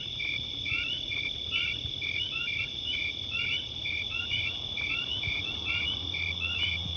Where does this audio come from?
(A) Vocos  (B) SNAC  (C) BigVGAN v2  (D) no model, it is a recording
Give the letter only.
A